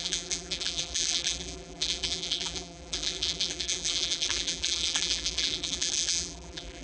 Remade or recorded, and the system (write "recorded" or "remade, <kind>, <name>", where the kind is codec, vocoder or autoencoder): remade, vocoder, BigVGAN v2